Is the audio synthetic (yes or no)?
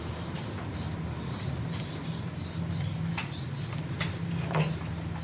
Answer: no